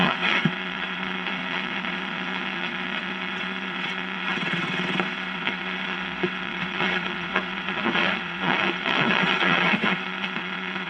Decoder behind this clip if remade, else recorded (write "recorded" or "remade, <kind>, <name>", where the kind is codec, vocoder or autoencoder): remade, vocoder, WaveNeXt